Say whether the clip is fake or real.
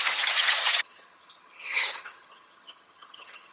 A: fake